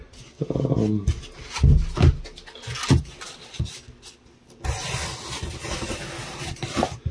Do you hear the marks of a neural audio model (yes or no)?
no